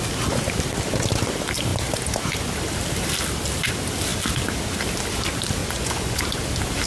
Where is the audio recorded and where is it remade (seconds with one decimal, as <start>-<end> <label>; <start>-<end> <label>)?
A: 0.0-5.6 recorded; 5.6-6.2 remade; 6.2-6.9 recorded